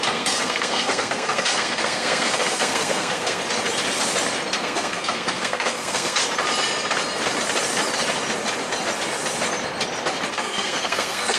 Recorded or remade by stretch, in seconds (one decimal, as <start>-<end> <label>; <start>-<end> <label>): 0.0-3.4 remade; 3.4-4.6 recorded; 4.6-6.2 remade; 6.2-10.3 recorded; 10.3-11.4 remade